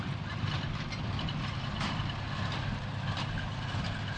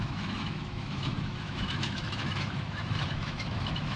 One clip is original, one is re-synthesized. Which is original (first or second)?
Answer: first